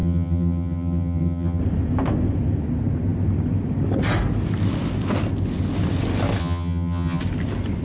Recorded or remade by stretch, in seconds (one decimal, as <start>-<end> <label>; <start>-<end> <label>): 0.0-1.6 remade; 1.6-6.4 recorded; 6.4-7.2 remade; 7.2-7.8 recorded